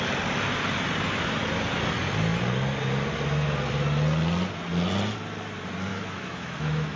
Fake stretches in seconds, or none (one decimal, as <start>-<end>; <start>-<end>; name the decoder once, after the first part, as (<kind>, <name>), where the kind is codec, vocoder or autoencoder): 5.9-7.0 (autoencoder, DAC-VAE)